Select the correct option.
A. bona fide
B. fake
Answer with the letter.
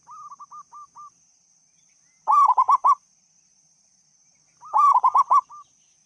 A